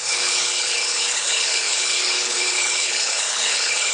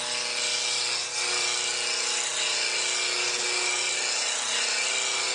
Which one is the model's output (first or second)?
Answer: first